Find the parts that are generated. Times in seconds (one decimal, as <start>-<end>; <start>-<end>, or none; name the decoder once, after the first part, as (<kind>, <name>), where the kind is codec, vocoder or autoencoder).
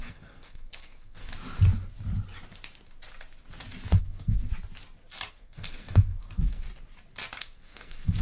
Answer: 0.0-1.3 (codec, SNAC); 4.0-4.5; 5.3-6.7; 7.4-8.2